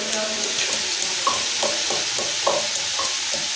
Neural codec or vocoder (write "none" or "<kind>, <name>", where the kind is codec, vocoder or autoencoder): none